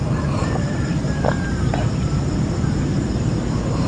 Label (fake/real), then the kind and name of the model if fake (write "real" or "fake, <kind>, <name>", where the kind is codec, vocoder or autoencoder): fake, vocoder, BigVGAN v2